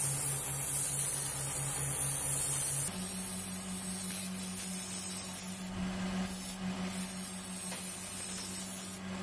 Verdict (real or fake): real